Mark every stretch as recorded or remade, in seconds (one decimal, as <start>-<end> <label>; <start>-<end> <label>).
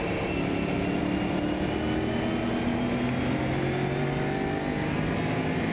0.0-5.7 recorded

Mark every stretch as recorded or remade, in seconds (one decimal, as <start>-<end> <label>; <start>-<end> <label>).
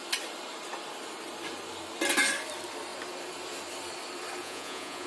0.0-4.4 recorded; 4.4-5.1 remade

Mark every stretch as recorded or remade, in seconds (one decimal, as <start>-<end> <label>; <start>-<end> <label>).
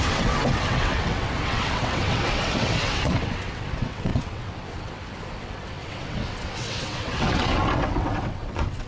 0.0-8.9 remade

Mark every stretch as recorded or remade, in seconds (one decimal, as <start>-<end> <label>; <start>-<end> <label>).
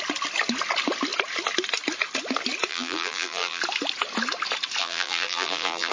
0.0-2.7 recorded; 2.7-3.6 remade; 3.6-4.8 recorded; 4.8-5.9 remade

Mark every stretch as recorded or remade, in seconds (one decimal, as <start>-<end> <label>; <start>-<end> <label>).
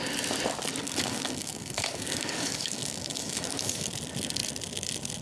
0.0-0.8 recorded; 0.8-3.9 remade; 3.9-5.2 recorded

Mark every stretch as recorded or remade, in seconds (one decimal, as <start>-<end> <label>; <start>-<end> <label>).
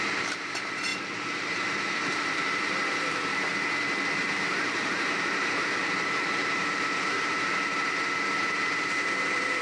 0.0-3.5 remade; 3.5-4.5 recorded; 4.5-9.6 remade